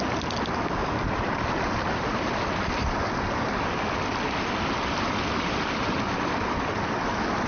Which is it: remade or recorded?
recorded